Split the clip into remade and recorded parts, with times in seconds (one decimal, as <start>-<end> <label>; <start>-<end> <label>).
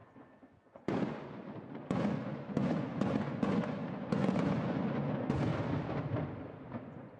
0.0-5.5 remade; 5.5-6.8 recorded; 6.8-7.2 remade